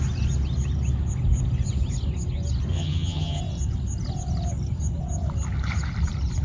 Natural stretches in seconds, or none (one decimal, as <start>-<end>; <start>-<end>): 0.0-2.7; 3.4-6.4